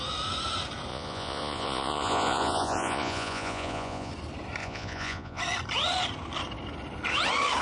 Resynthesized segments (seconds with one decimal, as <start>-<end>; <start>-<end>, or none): 0.9-4.1; 4.6-5.4